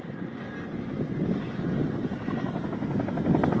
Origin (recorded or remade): recorded